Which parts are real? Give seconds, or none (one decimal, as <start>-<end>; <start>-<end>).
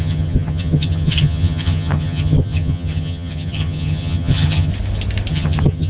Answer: 4.7-5.3